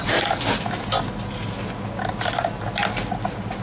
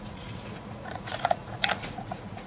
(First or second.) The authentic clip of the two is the first